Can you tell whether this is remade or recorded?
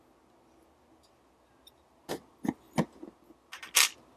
recorded